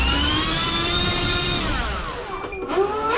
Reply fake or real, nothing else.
fake